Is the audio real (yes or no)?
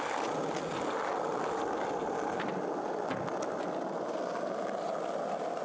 yes